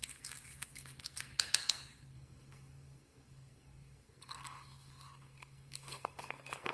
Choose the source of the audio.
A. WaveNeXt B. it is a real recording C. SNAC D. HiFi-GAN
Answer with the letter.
C